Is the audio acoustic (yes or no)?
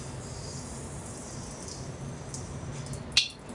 yes